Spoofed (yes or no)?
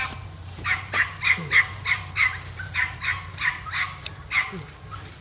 no